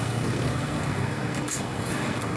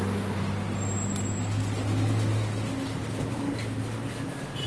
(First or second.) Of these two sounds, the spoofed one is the first